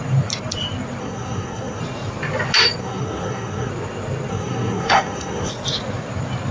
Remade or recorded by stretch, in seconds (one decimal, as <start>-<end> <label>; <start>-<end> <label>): 0.0-1.0 recorded; 1.0-1.8 remade; 1.8-2.8 recorded; 2.8-3.7 remade; 3.7-4.3 recorded; 4.3-5.5 remade; 5.5-6.5 recorded